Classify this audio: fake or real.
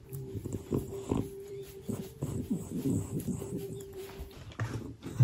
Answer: fake